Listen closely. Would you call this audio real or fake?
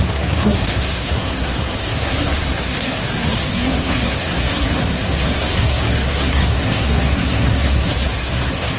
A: fake